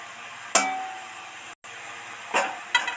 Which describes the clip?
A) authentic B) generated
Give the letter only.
A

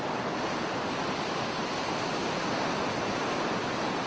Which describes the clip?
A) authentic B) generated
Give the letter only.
A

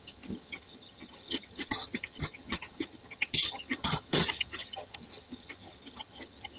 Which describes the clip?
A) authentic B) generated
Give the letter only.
B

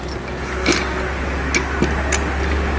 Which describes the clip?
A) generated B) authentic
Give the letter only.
B